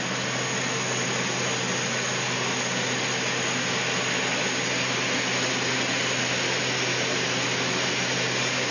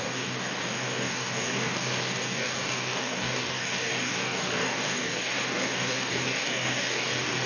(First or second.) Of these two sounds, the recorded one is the first